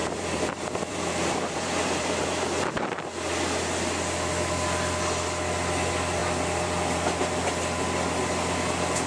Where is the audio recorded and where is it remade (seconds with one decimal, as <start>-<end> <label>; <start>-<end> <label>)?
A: 0.0-3.3 remade; 3.3-6.2 recorded; 6.2-7.3 remade; 7.3-9.1 recorded